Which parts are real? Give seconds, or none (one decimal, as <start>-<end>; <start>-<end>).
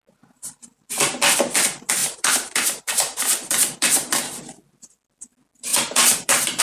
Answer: 0.0-2.0; 4.3-5.7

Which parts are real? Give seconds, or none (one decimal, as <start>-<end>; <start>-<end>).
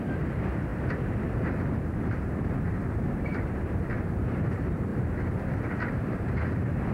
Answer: 0.7-1.7; 3.3-3.9; 4.9-5.8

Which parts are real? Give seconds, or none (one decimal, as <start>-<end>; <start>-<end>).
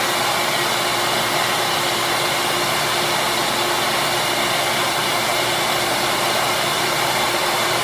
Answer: 0.0-4.8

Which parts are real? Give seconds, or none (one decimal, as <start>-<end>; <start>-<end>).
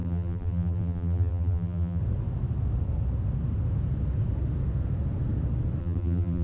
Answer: 2.0-5.8